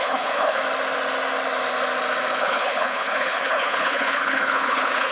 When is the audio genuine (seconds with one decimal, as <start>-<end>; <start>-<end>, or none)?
0.6-2.4